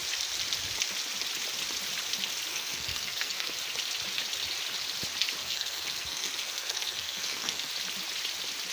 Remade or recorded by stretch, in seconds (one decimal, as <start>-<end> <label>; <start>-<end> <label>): 0.0-2.5 recorded; 2.5-3.6 remade; 3.6-5.4 recorded; 5.4-7.7 remade; 7.7-8.7 recorded